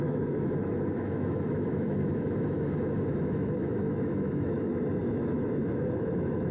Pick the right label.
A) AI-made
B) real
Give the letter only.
A